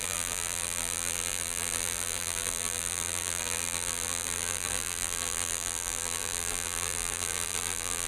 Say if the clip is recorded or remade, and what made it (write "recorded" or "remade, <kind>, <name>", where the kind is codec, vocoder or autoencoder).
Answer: remade, vocoder, BigVGAN v2